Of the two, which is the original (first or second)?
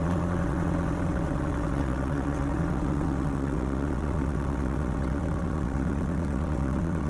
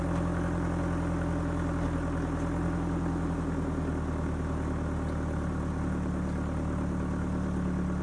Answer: second